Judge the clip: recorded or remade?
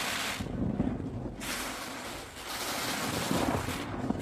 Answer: recorded